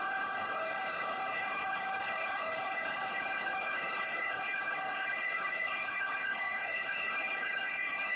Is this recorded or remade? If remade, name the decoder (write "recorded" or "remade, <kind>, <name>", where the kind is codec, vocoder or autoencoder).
remade, codec, HILCodec